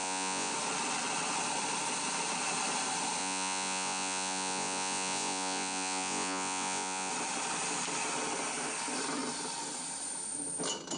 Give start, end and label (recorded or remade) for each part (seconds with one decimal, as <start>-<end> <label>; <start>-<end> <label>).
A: 0.0-0.5 remade; 0.5-3.2 recorded; 3.2-7.1 remade; 7.1-11.0 recorded